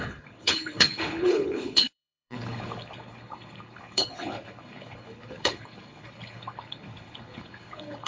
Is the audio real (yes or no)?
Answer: no